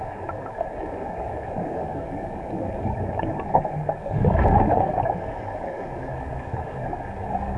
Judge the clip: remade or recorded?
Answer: remade